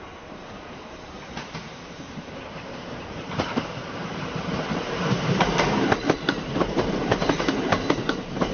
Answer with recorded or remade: remade